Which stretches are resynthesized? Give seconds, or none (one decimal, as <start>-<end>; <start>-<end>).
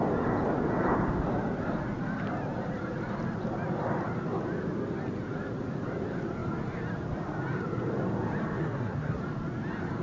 8.6-9.2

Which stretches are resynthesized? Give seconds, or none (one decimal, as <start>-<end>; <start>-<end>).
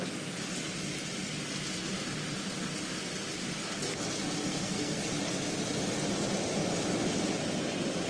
4.5-5.0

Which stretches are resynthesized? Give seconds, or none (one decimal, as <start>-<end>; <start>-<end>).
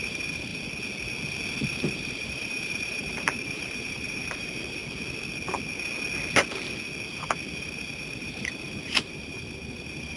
0.0-0.5; 1.5-4.8; 7.6-10.2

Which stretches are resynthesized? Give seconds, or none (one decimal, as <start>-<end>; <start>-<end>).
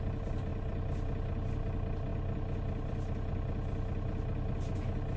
none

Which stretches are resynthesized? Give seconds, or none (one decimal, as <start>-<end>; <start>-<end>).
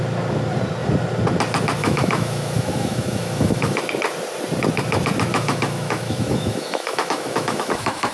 1.8-3.8; 5.3-8.1